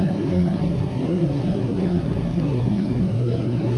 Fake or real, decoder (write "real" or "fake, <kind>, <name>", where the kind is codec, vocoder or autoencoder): fake, codec, SNAC